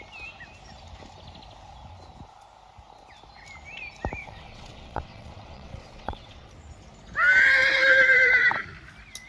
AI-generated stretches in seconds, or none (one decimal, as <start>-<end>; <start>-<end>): 4.2-6.5